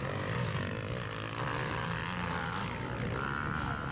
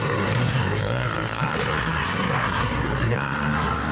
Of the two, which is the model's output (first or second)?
second